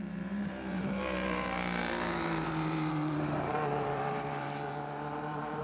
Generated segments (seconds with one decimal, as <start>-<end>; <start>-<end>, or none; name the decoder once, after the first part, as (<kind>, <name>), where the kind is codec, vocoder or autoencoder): 0.0-5.6 (vocoder, BigVGAN v2)